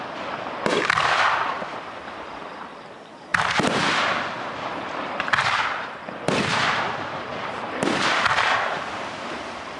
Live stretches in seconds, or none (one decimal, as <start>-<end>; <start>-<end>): 7.3-8.7